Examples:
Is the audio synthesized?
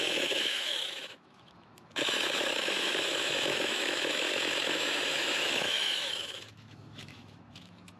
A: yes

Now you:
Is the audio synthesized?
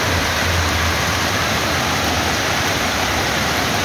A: no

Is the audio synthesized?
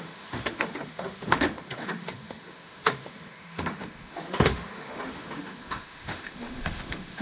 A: yes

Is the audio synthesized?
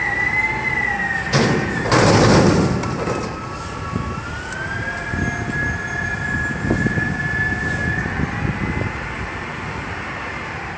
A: no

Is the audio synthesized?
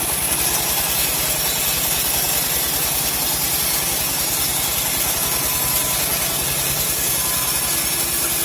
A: no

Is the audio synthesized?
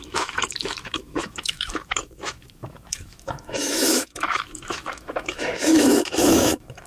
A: yes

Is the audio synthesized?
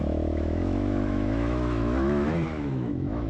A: yes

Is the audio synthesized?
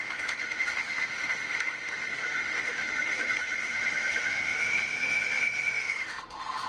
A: yes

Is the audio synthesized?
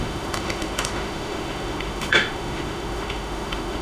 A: yes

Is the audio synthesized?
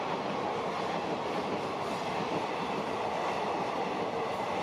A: no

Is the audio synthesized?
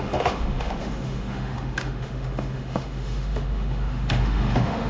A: yes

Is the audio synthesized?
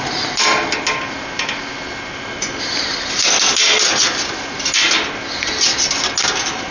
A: no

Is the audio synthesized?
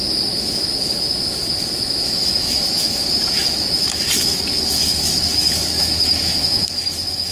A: yes